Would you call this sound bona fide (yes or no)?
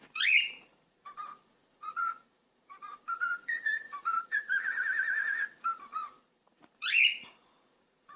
no